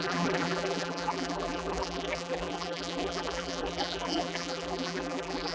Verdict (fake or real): fake